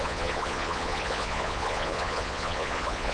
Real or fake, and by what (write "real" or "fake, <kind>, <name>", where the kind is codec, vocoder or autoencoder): fake, vocoder, Vocos